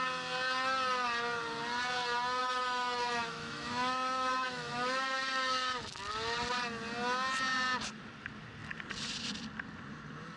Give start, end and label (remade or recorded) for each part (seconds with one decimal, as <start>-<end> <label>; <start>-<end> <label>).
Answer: 0.0-2.4 recorded; 2.4-6.0 remade; 6.0-10.4 recorded